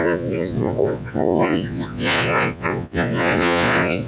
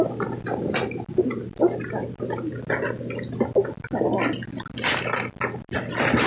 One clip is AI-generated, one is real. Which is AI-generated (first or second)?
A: first